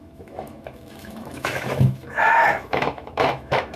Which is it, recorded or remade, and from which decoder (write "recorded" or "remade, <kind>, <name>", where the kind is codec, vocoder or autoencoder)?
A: remade, autoencoder, DAC-VAE